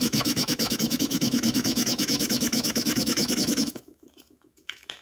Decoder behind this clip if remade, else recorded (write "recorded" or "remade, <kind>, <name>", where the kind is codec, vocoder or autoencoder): remade, autoencoder, DAC-VAE